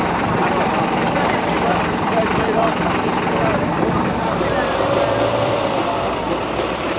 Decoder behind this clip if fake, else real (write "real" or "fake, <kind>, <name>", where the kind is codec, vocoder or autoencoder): fake, vocoder, BigVGAN v2